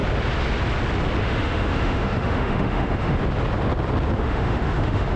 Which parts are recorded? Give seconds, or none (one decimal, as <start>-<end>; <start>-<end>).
0.0-1.2; 3.2-4.2